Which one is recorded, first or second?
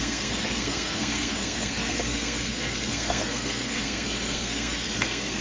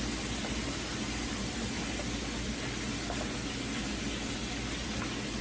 second